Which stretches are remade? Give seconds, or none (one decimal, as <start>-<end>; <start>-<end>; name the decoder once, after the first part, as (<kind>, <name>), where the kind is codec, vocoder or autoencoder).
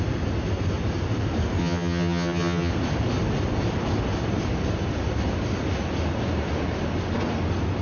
1.6-2.7 (vocoder, HiFi-GAN)